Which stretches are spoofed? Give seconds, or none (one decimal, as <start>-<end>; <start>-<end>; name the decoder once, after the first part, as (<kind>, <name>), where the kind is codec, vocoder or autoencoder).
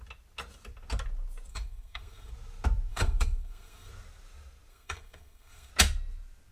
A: 1.5-2.3 (codec, SNAC); 2.9-3.9; 4.7-5.7